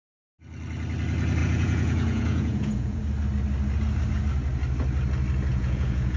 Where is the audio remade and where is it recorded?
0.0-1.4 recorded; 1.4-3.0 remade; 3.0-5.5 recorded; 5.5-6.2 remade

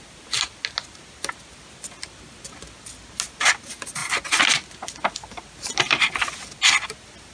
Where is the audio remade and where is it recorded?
0.0-7.3 recorded

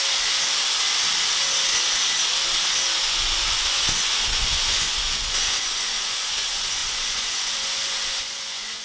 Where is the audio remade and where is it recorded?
0.0-3.0 recorded; 3.0-8.8 remade